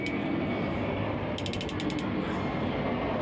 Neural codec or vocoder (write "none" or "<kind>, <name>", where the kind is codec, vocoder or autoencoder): none